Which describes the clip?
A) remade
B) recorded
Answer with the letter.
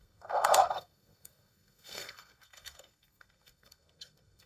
A